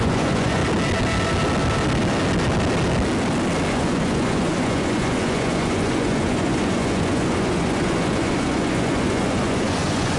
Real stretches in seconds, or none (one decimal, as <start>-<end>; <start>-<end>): 0.6-3.7